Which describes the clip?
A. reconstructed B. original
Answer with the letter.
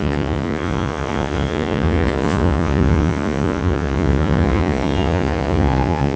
A